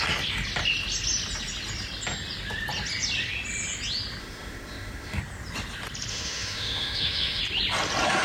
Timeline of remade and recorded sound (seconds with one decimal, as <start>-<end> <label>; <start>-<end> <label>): 0.0-4.2 recorded; 4.2-5.2 remade; 5.2-6.1 recorded; 6.1-7.4 remade; 7.4-8.2 recorded